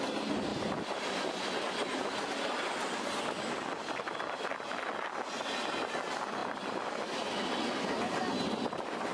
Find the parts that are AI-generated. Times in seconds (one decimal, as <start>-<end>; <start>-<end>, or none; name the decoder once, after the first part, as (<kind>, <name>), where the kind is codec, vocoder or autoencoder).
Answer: none